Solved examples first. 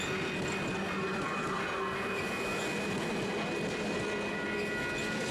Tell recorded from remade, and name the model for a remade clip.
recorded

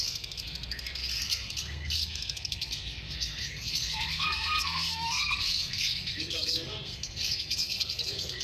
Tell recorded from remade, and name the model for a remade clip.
remade, codec, SNAC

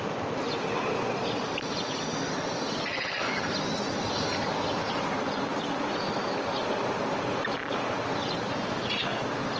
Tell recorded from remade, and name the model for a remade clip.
recorded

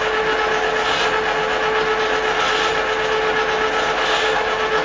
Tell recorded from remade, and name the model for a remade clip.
recorded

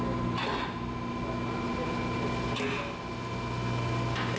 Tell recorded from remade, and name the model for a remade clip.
recorded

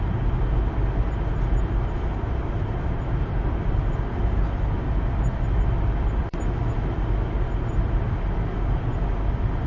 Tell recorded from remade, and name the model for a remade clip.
recorded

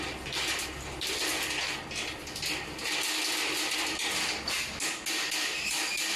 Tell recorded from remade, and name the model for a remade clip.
recorded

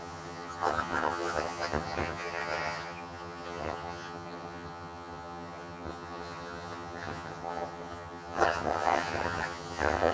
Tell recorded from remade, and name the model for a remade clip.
remade, vocoder, HiFi-GAN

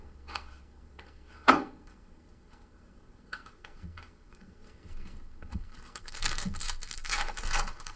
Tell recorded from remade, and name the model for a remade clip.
remade, codec, SNAC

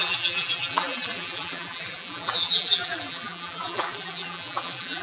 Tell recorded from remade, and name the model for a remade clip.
remade, vocoder, BigVGAN v2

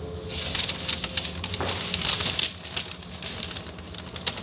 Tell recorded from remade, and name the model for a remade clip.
recorded